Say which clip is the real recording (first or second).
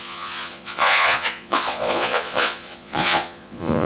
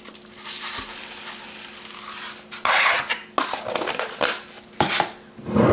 second